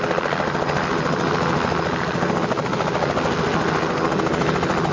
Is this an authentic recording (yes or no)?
yes